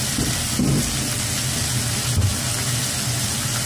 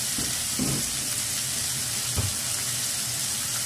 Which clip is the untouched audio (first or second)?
first